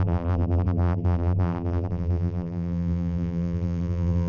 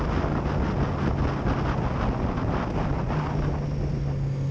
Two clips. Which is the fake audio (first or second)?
first